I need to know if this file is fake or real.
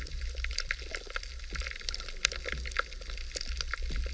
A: real